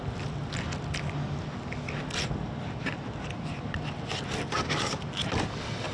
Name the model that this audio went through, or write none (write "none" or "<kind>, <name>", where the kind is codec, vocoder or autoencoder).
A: none